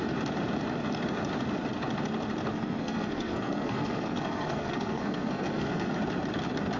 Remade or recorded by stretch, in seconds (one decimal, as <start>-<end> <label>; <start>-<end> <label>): 0.0-2.5 recorded; 2.5-5.9 remade; 5.9-6.8 recorded